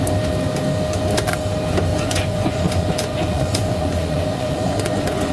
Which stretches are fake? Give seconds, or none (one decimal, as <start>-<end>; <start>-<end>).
1.9-5.3